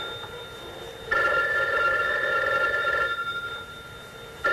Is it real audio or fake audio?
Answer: real